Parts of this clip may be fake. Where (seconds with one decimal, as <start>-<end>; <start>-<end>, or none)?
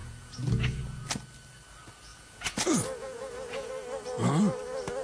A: 0.0-0.8; 2.1-3.7